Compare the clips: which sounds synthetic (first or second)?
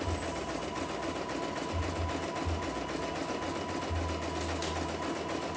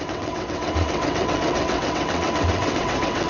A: second